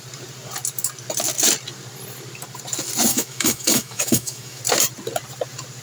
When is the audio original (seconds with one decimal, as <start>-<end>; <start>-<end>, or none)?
0.0-3.1; 4.6-5.8